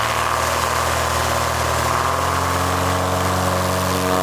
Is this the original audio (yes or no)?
yes